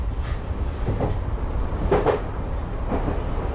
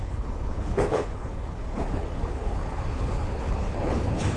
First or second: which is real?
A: first